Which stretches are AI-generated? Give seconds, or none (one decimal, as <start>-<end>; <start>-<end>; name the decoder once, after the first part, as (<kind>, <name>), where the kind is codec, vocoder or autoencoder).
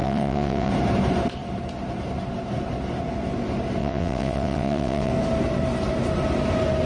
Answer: 0.0-0.7 (vocoder, WaveNeXt); 3.8-5.1